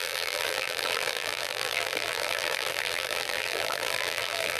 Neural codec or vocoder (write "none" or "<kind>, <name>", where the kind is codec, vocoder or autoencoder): vocoder, BigVGAN v2